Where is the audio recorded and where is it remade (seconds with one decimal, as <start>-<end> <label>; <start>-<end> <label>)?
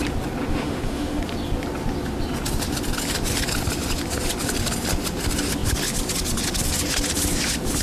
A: 0.0-0.5 recorded; 0.5-1.2 remade; 1.2-7.8 recorded